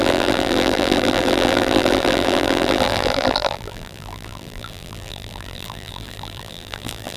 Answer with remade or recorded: remade